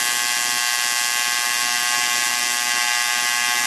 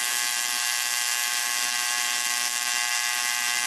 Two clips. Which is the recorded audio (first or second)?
first